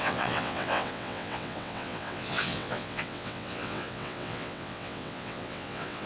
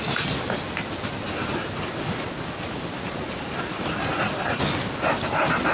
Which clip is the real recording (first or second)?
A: second